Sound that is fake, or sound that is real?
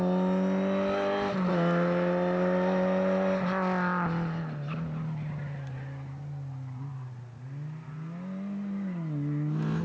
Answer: real